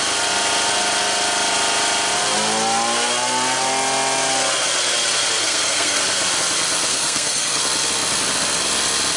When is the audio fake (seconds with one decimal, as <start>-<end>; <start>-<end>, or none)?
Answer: 5.4-6.0; 6.9-7.6